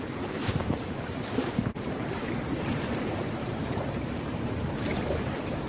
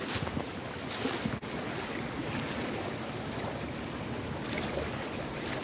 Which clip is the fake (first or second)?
first